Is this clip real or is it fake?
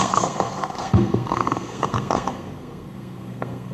fake